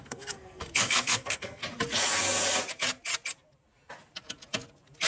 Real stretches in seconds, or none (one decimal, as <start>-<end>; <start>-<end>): 1.6-5.1